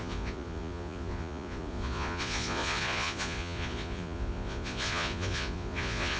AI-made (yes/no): yes